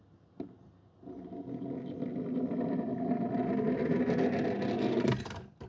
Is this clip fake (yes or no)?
no